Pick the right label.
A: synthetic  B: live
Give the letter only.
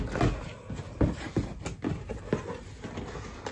B